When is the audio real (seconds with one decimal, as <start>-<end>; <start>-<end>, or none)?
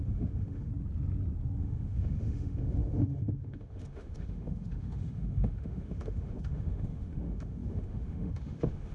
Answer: 0.7-1.6